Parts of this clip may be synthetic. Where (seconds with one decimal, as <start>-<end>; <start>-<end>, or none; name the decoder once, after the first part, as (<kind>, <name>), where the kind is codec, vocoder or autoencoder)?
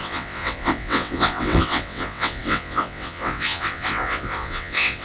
0.0-5.0 (vocoder, WaveNeXt)